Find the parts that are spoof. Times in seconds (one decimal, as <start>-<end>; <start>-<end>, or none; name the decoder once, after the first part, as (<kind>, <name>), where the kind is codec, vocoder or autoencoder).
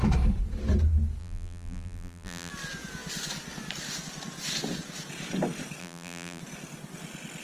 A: 1.2-2.5 (vocoder, BigVGAN v2); 5.8-6.4